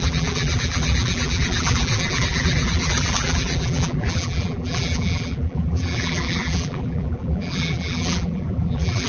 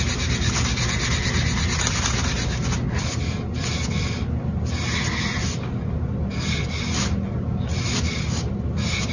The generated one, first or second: first